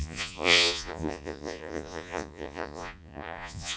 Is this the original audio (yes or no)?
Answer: no